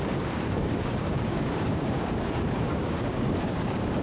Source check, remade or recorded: remade